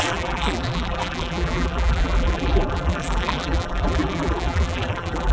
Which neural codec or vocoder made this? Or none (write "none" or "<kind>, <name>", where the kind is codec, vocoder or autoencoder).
vocoder, BigVGAN v2